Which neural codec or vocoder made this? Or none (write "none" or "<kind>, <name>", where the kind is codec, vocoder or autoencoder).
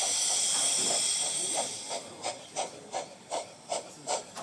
vocoder, BigVGAN v2